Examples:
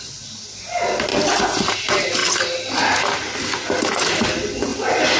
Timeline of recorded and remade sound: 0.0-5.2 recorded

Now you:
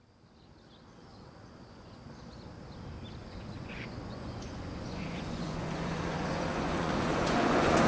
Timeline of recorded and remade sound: 0.0-1.1 recorded; 1.1-2.0 remade; 2.0-3.2 recorded; 3.2-7.9 remade

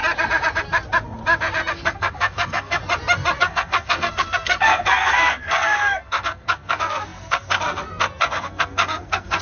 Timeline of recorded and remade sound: 0.0-1.7 recorded; 1.7-2.8 remade; 2.8-3.4 recorded; 3.4-9.4 remade

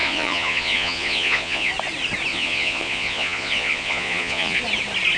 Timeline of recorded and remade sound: 0.0-1.7 remade; 1.7-2.3 recorded; 2.3-4.6 remade; 4.6-5.2 recorded

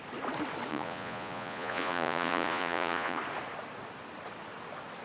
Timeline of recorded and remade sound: 0.0-0.7 recorded; 0.7-3.2 remade; 3.2-5.0 recorded

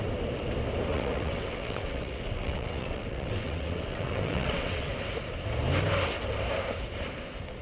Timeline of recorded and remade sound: 0.0-0.9 recorded; 0.9-4.9 remade; 4.9-7.6 recorded

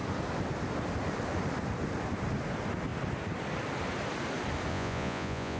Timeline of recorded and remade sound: 0.0-4.7 recorded; 4.7-5.6 remade

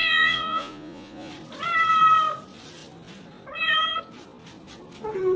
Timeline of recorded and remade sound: 0.0-1.3 remade; 1.3-5.4 recorded